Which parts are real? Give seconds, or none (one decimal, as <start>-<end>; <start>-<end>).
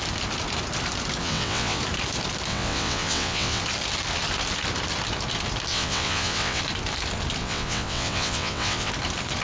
0.0-1.2; 1.8-2.5; 3.6-5.7; 6.6-7.4; 8.9-9.4